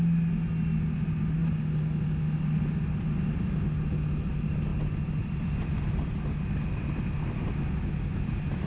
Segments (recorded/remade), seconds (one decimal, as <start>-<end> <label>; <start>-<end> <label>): 0.0-8.1 recorded; 8.1-8.7 remade